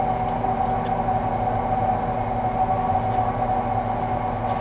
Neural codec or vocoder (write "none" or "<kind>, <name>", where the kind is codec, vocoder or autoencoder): none